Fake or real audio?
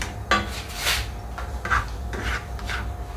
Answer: real